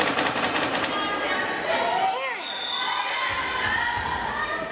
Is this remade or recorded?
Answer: recorded